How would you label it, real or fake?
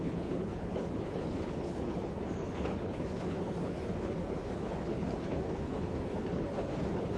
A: fake